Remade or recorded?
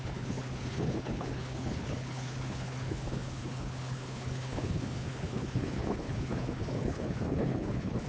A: remade